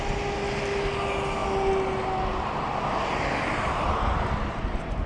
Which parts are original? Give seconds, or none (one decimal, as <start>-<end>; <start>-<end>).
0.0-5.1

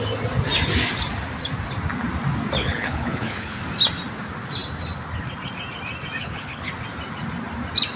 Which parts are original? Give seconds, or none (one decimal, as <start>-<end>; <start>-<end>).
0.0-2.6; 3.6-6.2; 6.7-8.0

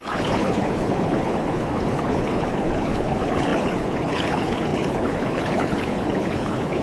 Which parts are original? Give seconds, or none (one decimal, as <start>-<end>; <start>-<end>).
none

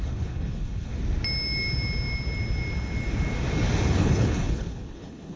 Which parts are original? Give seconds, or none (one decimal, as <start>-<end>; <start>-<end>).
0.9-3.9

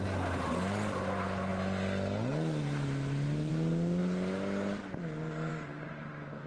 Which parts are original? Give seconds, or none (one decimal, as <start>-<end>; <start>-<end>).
0.0-6.5

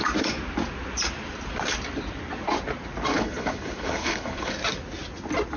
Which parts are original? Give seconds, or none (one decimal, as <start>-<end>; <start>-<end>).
0.0-3.1; 4.5-5.6